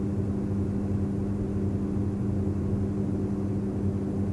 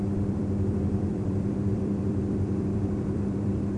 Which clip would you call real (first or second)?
first